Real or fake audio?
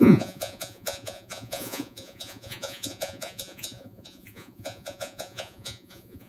fake